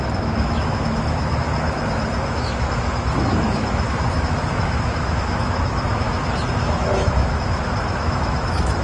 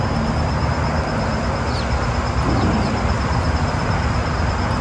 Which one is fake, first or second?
first